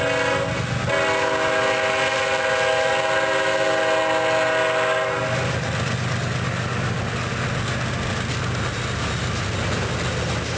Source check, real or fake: real